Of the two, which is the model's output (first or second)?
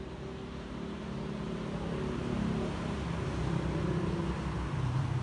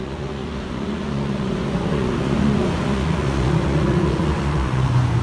second